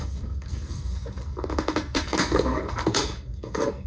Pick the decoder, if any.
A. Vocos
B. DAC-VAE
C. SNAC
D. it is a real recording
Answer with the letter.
C